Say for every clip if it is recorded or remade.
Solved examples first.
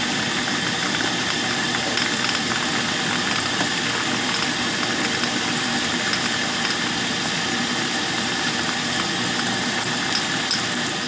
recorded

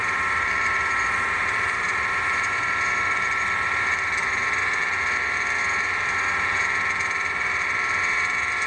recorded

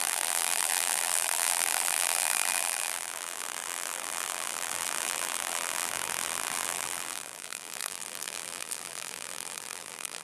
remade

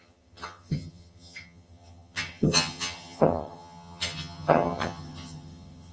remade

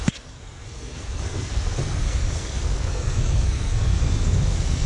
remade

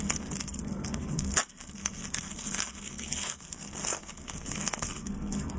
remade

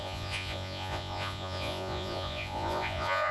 remade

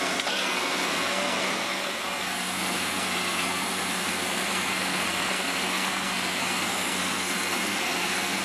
remade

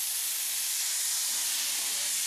remade